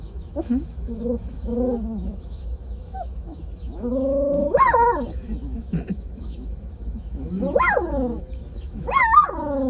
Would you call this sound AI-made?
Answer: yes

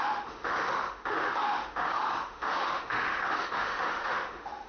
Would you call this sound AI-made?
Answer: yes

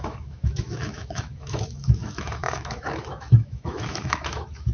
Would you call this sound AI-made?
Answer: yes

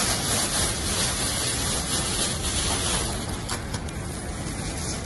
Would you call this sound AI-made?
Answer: no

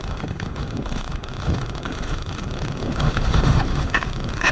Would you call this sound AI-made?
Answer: yes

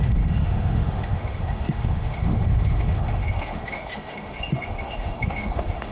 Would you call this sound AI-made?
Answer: yes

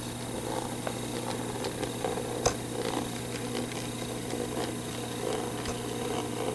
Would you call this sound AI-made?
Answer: no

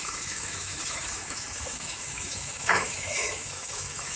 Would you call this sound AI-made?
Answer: yes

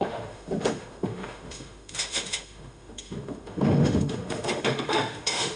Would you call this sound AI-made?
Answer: yes